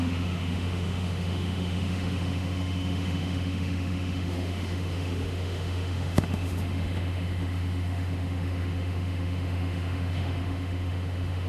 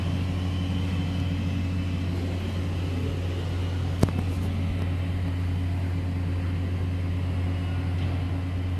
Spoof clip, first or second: first